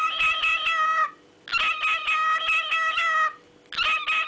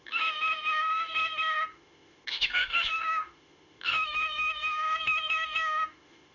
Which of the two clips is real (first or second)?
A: first